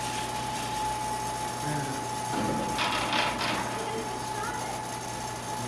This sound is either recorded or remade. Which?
recorded